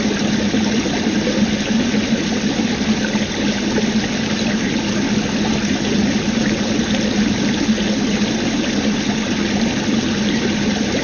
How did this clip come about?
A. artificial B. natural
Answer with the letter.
B